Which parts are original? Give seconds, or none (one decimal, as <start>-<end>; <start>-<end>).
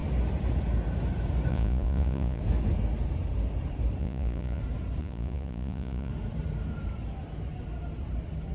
0.0-1.5; 2.4-4.0; 4.6-5.0; 6.1-8.5